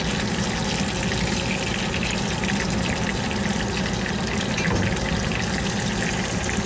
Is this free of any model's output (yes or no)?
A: yes